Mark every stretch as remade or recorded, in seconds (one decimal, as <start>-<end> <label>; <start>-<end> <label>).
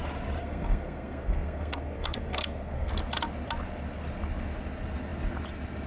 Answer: 0.0-0.4 recorded; 0.4-2.9 remade; 2.9-5.9 recorded